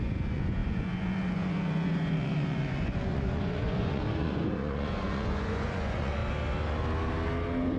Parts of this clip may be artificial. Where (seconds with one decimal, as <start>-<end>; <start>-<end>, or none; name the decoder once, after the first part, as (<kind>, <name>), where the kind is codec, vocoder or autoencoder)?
0.0-6.2 (vocoder, Vocos)